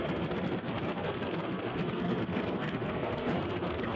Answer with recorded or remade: remade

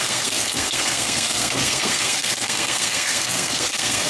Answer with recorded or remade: remade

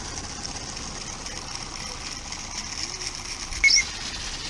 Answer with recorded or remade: recorded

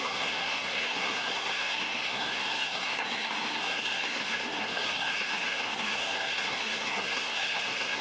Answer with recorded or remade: remade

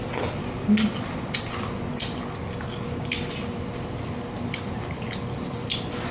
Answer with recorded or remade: recorded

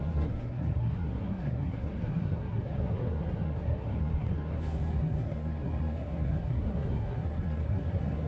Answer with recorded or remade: remade